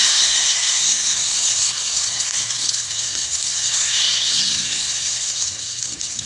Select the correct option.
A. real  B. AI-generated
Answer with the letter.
B